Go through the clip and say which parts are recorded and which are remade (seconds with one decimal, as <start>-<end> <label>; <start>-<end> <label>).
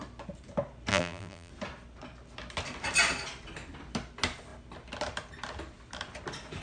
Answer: 0.0-0.9 recorded; 0.9-1.5 remade; 1.5-6.6 recorded